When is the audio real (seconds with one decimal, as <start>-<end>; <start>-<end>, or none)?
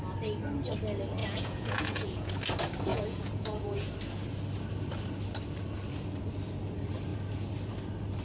0.0-1.2; 2.3-2.9; 3.9-8.2